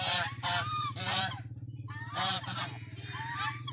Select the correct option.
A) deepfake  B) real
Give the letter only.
A